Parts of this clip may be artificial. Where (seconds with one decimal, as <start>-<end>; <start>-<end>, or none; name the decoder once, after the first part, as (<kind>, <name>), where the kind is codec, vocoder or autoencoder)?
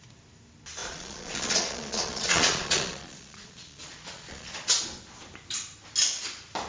0.8-4.8 (vocoder, Vocos)